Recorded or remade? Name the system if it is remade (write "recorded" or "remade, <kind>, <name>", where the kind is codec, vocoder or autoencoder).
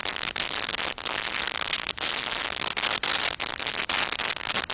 recorded